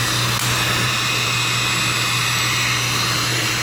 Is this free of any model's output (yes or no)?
yes